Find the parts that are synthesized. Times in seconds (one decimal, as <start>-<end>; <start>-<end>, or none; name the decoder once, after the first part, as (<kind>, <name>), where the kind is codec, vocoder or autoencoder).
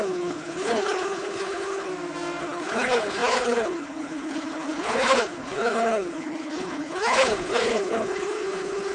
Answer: 0.0-1.9 (codec, HILCodec); 2.4-8.9